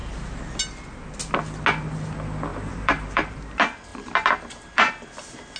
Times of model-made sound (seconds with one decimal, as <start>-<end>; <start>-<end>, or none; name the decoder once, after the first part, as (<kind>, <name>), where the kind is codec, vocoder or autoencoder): 2.5-3.4 (vocoder, BigVGAN v2); 3.9-4.9